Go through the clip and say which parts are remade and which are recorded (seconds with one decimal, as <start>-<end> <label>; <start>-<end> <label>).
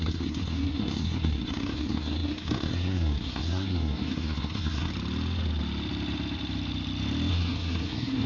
0.0-4.9 remade; 4.9-7.3 recorded; 7.3-8.3 remade